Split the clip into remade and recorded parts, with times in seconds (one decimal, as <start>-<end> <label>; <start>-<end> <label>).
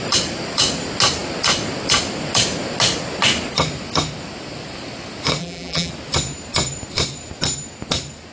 0.0-5.4 recorded; 5.4-5.9 remade; 5.9-8.3 recorded